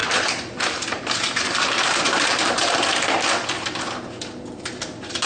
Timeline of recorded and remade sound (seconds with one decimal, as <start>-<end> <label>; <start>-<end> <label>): 0.0-3.2 remade; 3.2-5.3 recorded